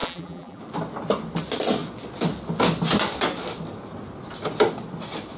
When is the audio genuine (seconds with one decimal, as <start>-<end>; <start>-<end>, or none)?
0.6-5.4